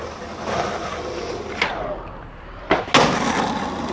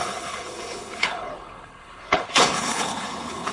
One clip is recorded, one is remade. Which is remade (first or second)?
second